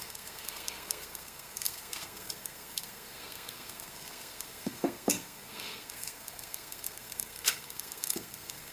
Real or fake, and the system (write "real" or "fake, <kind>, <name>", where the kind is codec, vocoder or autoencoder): fake, codec, SNAC